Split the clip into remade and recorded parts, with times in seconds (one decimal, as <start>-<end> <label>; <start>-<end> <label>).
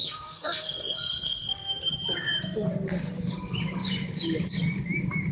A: 0.0-1.8 remade; 1.8-5.3 recorded